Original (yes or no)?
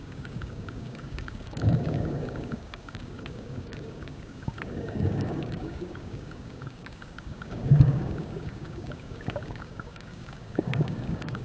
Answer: no